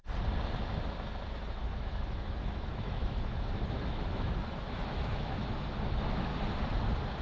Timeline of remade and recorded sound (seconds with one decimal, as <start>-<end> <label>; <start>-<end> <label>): 0.0-1.3 recorded; 1.3-6.3 remade; 6.3-7.2 recorded